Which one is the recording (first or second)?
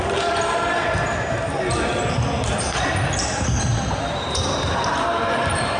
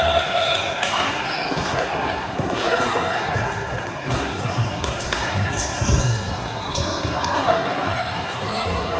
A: first